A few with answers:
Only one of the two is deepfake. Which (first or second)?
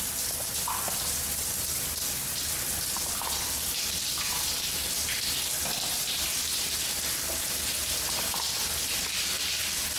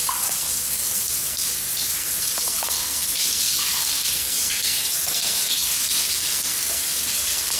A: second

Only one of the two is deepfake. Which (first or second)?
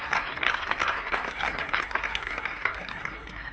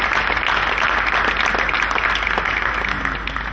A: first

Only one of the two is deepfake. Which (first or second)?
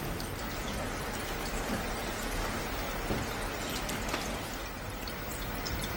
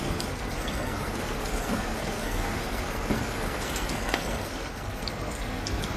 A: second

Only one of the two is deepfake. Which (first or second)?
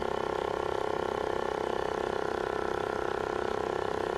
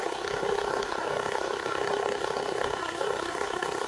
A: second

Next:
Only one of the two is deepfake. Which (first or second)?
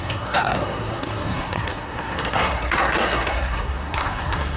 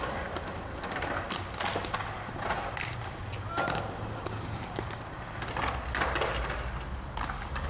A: first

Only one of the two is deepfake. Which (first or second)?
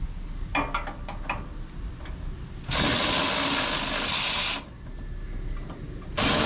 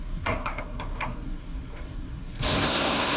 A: second